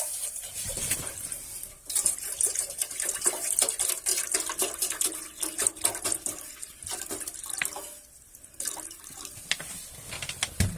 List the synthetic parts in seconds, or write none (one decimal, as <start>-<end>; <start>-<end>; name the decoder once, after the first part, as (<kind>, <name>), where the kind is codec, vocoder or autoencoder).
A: 0.0-4.1 (vocoder, BigVGAN v2); 6.6-10.8